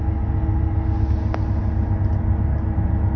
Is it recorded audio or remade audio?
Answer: recorded